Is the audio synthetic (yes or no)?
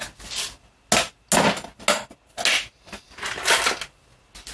no